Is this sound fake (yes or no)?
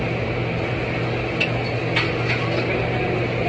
no